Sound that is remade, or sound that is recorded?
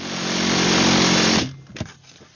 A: recorded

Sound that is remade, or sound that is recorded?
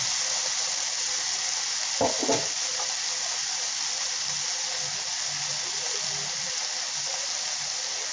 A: recorded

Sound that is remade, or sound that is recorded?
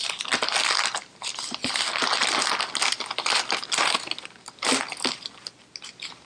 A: recorded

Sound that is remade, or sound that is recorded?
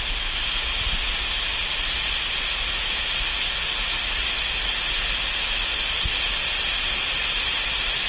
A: recorded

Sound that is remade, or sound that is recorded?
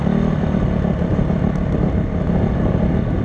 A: recorded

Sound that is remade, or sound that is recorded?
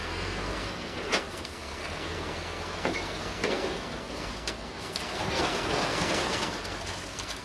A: remade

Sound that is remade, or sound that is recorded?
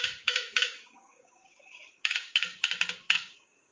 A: remade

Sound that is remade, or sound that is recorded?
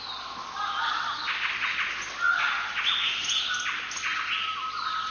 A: recorded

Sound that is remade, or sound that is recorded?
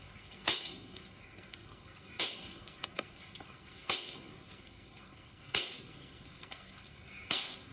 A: remade